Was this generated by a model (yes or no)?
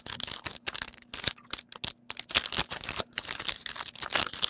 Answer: no